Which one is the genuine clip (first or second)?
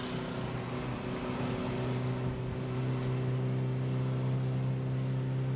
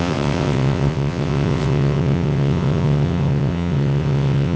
first